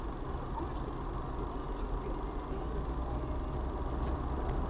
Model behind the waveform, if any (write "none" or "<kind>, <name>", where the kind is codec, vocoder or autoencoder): none